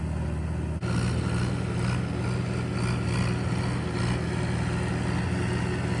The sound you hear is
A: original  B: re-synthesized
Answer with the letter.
A